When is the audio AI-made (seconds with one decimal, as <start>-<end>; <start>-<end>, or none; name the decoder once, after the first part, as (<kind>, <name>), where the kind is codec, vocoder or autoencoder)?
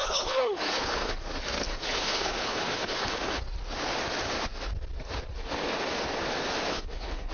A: 0.0-1.2 (codec, HILCodec); 1.6-3.4; 6.7-7.3